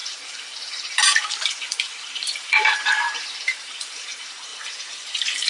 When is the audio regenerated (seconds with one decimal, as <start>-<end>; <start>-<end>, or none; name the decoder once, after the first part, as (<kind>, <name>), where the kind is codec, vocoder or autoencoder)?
0.0-5.5 (vocoder, BigVGAN v2)